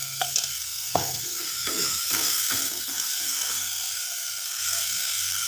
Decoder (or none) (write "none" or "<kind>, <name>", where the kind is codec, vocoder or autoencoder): codec, SNAC